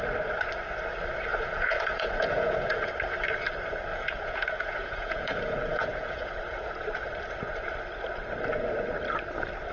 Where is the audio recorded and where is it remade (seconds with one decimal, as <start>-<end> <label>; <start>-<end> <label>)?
0.0-1.3 recorded; 1.3-2.9 remade; 2.9-3.9 recorded; 3.9-6.7 remade; 6.7-9.7 recorded